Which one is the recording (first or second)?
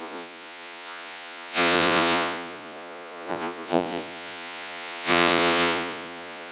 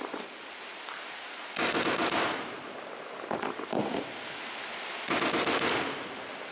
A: second